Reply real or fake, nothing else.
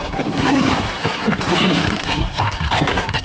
fake